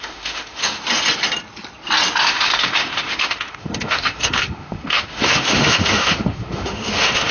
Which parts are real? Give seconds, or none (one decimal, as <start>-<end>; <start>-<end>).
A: 0.8-2.2